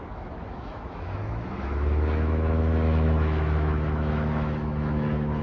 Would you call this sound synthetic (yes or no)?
yes